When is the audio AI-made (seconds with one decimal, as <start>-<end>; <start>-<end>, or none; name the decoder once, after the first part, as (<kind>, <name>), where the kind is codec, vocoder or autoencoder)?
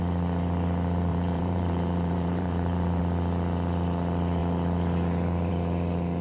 1.1-3.0 (vocoder, BigVGAN v2)